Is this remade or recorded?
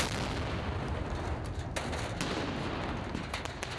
recorded